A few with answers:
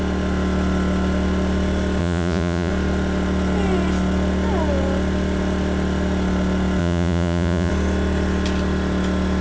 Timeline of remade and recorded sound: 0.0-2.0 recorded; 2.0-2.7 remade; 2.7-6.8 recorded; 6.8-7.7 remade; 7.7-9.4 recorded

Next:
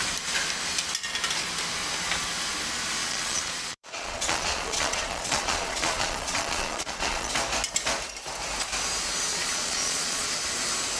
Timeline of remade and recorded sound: 0.0-3.0 recorded; 3.0-7.3 remade; 7.3-9.3 recorded; 9.3-10.3 remade; 10.3-11.0 recorded

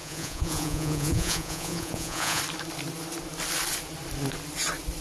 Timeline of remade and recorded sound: 0.0-2.4 remade; 2.4-5.0 recorded

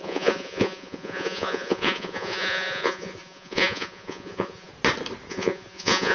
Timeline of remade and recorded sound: 0.0-4.7 remade; 4.7-5.3 recorded; 5.3-6.1 remade

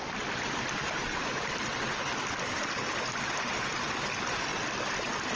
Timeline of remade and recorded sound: 0.0-5.4 recorded

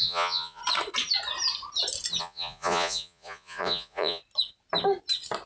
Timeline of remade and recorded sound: 0.0-0.6 remade; 0.6-2.2 recorded; 2.2-4.2 remade; 4.2-5.5 recorded

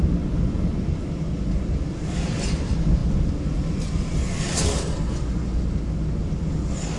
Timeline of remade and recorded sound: 0.0-7.0 recorded